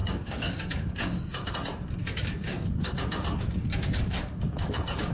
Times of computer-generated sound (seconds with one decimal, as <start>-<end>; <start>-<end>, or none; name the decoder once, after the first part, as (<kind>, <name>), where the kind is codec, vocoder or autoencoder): 0.0-1.5 (codec, DAC); 2.0-5.1